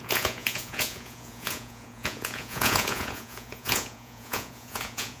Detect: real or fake fake